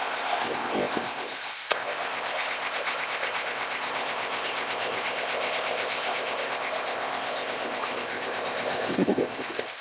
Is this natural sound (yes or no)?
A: no